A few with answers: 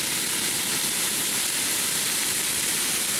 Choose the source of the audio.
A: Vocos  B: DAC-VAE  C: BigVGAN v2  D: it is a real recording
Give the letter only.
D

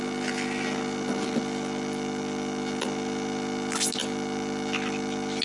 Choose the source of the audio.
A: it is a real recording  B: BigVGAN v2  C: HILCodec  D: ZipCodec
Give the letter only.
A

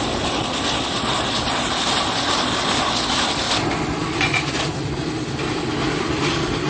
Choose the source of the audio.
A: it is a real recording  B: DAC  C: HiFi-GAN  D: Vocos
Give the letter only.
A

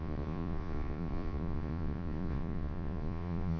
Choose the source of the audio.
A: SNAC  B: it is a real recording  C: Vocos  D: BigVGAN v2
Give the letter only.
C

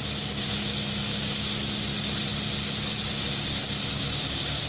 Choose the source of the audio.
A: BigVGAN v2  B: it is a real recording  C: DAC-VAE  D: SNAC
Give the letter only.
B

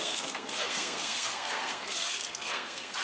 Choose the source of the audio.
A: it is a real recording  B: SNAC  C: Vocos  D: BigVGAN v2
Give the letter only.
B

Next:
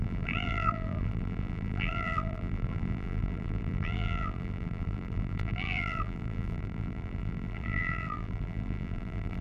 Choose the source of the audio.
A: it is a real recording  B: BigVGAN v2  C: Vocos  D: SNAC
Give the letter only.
B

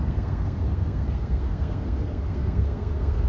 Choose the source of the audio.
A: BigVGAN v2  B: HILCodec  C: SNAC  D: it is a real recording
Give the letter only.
C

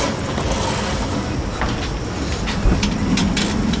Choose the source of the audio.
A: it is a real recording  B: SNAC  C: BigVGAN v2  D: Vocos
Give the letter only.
A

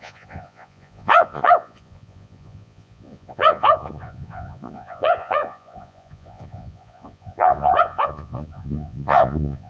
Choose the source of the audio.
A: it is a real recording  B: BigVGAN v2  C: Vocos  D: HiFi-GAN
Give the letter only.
C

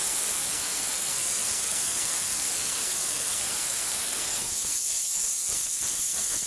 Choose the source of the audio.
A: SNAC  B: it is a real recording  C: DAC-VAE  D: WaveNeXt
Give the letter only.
A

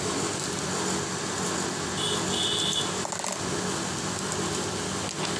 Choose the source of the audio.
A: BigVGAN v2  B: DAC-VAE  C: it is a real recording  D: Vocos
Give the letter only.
C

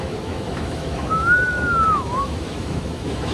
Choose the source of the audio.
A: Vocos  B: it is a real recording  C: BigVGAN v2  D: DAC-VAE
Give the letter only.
D